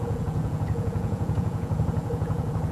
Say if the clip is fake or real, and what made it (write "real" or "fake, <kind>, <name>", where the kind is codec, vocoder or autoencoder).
fake, vocoder, Vocos